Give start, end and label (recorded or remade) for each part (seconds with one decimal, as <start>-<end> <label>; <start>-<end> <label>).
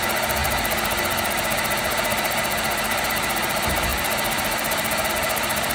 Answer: 0.0-5.7 recorded